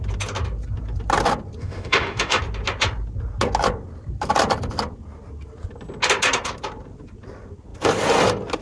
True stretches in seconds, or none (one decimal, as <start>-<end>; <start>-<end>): 0.0-1.6; 2.4-8.6